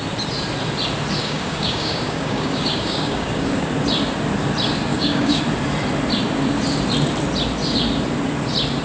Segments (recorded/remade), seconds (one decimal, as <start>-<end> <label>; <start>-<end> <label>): 0.0-1.2 recorded; 1.2-3.7 remade; 3.7-4.9 recorded; 4.9-5.4 remade; 5.4-8.8 recorded